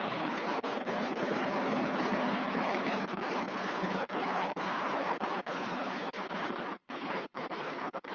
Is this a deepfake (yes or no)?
yes